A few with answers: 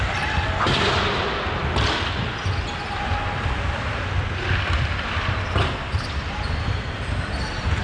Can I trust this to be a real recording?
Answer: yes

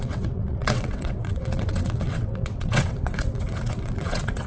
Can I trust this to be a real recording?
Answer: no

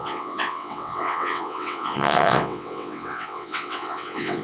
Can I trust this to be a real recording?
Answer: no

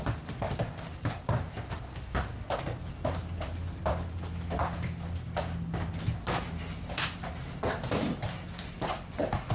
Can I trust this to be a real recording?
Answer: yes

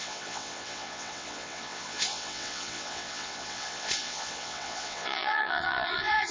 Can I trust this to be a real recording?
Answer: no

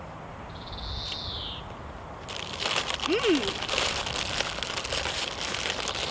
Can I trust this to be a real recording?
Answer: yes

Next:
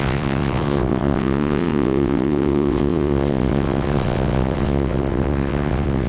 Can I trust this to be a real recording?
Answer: no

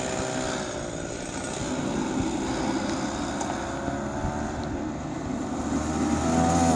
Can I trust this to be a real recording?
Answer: yes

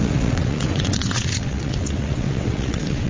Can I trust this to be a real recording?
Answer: no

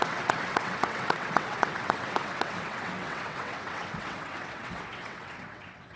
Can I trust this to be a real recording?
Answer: no